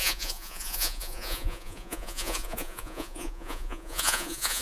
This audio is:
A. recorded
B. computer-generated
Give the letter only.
B